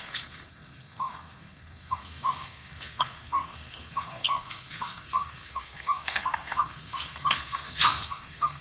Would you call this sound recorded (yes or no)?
no